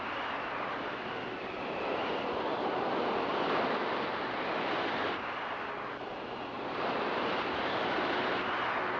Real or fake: real